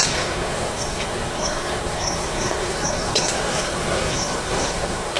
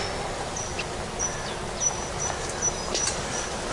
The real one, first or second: second